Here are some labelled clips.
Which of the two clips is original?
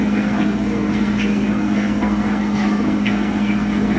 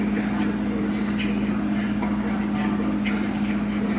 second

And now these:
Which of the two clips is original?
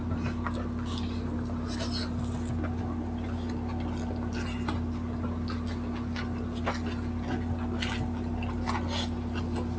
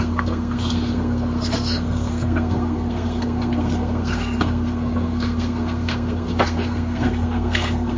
first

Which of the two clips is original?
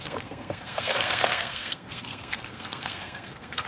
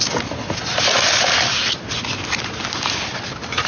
second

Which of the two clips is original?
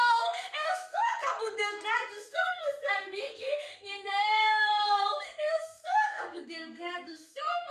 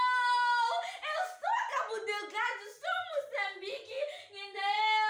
second